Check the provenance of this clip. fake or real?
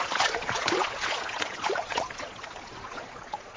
fake